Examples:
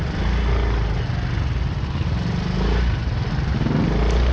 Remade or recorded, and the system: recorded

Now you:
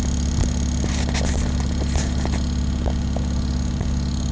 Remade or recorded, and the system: recorded